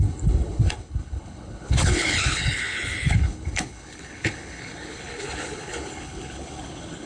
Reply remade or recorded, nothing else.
remade